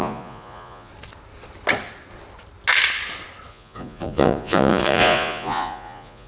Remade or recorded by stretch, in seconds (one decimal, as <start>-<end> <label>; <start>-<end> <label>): 0.0-0.9 remade; 0.9-3.5 recorded; 3.5-6.3 remade